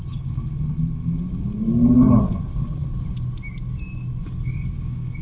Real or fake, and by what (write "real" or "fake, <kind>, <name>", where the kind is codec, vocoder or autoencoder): real